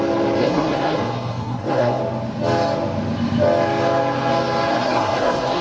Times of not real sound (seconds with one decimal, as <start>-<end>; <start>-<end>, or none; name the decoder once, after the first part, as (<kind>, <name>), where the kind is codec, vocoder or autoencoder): 0.4-2.0 (codec, SNAC); 4.7-5.6